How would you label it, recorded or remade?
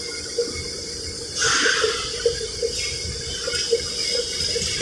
recorded